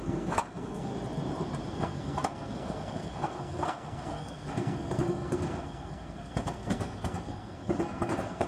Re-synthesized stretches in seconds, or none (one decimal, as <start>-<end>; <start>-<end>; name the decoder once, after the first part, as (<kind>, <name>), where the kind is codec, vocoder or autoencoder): 0.0-0.9 (codec, SNAC); 1.7-8.5